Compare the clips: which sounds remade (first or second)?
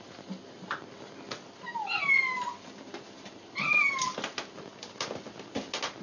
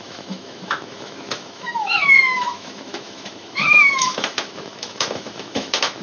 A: second